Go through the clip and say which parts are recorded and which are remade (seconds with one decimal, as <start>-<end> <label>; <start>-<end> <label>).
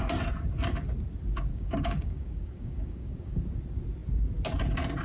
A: 0.0-1.5 recorded; 1.5-3.4 remade; 3.4-5.0 recorded